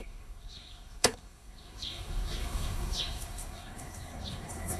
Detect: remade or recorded remade